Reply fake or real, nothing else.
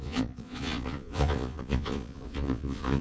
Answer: fake